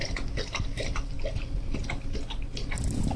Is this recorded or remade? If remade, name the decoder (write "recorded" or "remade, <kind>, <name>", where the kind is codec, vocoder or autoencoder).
recorded